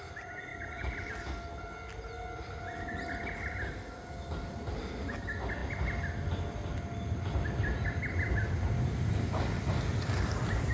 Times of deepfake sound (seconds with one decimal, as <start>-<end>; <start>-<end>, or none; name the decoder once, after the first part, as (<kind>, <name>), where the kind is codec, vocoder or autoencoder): 0.5-1.1 (vocoder, BigVGAN v2)